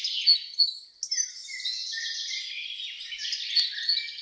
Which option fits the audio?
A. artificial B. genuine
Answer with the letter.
B